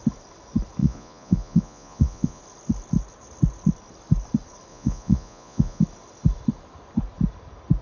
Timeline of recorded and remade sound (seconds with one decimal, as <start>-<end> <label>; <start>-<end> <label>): 0.0-0.8 recorded; 0.8-2.4 remade; 2.4-4.7 recorded; 4.7-5.8 remade; 5.8-7.8 recorded